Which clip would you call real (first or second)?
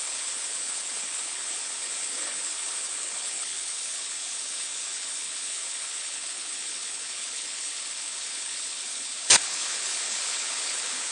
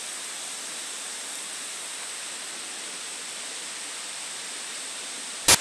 second